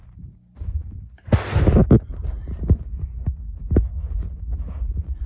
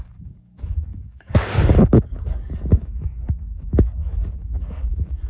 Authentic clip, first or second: first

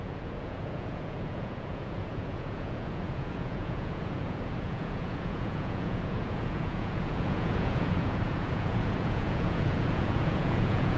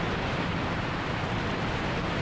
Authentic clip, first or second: second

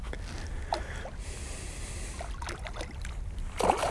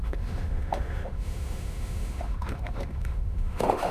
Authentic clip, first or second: first